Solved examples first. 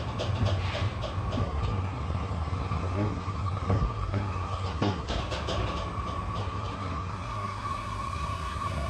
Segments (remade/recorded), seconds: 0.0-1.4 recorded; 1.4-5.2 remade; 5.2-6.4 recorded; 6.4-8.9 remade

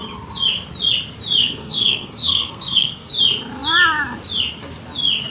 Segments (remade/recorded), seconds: 0.0-1.4 recorded; 1.4-3.1 remade; 3.1-5.3 recorded

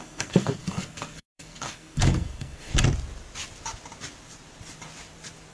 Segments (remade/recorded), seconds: 0.0-2.7 remade; 2.7-5.5 recorded

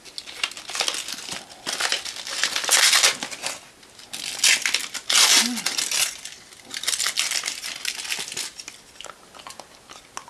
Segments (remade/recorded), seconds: 0.0-10.3 recorded

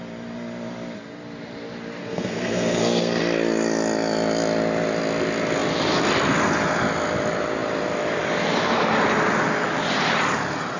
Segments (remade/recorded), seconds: 0.0-2.0 recorded; 2.0-3.2 remade; 3.2-10.8 recorded